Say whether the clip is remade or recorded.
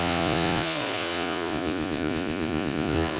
remade